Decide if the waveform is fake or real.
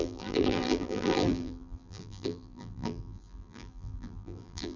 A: fake